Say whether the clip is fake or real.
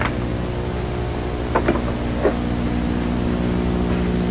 real